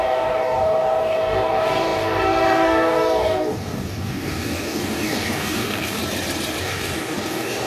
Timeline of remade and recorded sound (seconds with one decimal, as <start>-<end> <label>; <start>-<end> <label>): 0.0-6.0 remade; 6.0-6.6 recorded; 6.6-7.7 remade